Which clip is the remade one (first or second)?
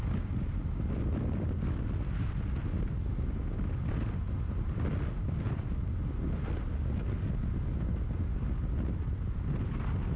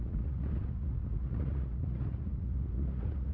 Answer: second